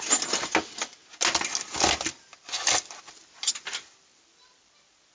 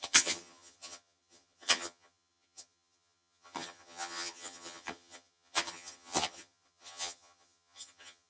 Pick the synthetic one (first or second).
second